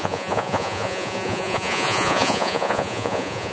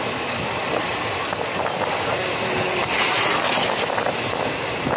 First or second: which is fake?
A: first